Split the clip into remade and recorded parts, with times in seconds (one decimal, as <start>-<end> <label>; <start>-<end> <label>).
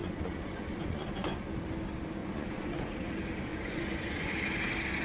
0.0-1.5 remade; 1.5-2.2 recorded; 2.2-2.9 remade; 2.9-3.5 recorded; 3.5-4.3 remade; 4.3-5.0 recorded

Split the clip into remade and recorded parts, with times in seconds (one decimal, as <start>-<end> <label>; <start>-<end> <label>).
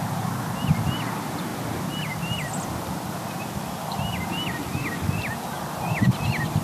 0.0-6.6 recorded